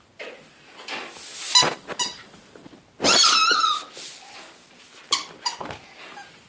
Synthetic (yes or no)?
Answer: no